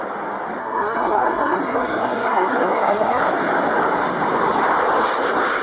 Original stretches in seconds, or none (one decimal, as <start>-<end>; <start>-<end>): 0.0-0.6; 3.2-5.6